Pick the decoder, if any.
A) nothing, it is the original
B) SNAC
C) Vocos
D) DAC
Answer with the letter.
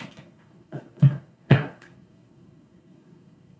B